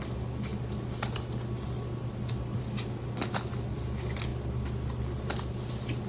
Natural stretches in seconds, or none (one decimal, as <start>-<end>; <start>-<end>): 0.0-6.1